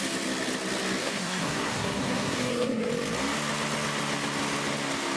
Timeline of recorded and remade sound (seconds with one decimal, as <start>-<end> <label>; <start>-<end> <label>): 0.0-1.0 recorded; 1.0-2.9 remade; 2.9-5.2 recorded